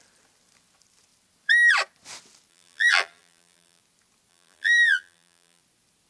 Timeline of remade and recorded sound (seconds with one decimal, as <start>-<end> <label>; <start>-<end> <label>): 0.0-2.5 recorded; 2.5-3.8 remade; 3.8-4.3 recorded; 4.3-5.6 remade; 5.6-6.1 recorded